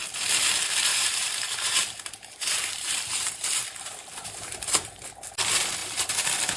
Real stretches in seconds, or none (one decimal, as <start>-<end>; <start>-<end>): 0.0-0.9; 4.9-5.8